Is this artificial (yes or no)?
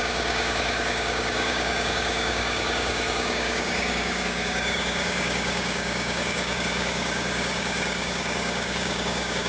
yes